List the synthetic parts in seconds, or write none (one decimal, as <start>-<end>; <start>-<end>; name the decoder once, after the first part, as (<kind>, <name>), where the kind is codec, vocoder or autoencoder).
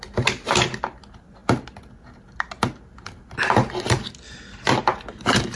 none